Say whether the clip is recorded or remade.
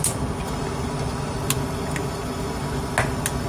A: recorded